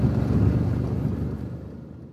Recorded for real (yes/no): yes